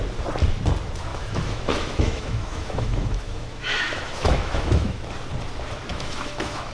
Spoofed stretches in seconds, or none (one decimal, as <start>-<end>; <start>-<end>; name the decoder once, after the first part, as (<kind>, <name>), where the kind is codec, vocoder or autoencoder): 1.1-5.1 (autoencoder, DAC-VAE); 5.9-6.7